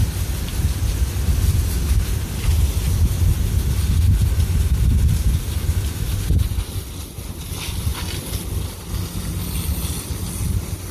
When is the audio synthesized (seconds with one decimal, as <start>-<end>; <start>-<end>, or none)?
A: none